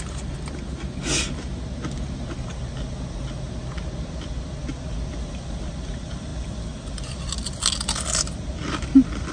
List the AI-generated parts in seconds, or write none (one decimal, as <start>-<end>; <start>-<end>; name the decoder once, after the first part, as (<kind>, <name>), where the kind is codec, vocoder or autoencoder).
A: none